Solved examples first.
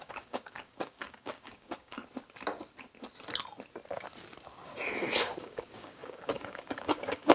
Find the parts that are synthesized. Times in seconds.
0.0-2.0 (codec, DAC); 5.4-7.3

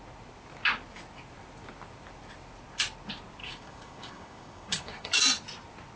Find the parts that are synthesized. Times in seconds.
3.4-5.2 (codec, DAC)

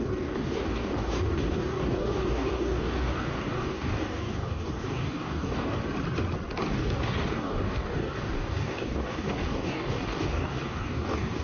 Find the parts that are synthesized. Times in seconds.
0.0-5.8 (codec, DAC); 6.7-11.4